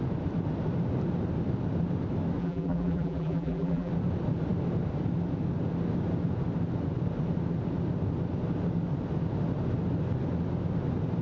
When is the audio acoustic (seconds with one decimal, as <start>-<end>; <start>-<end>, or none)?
0.0-2.4; 3.9-11.2